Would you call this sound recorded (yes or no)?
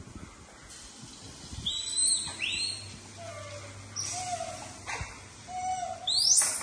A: yes